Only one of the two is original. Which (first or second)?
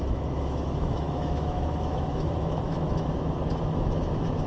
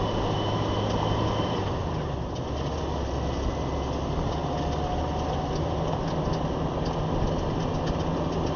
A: second